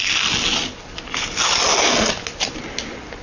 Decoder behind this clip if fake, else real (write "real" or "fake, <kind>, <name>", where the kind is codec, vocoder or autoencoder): real